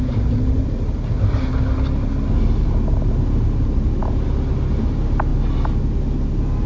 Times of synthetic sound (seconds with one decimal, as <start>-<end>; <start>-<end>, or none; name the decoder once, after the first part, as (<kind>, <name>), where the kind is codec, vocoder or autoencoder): none